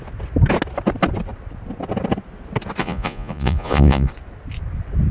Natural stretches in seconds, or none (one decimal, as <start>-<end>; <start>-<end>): 0.0-2.8; 4.1-5.1